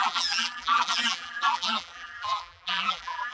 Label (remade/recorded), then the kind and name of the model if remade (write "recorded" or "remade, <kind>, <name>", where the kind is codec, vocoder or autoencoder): remade, vocoder, BigVGAN v2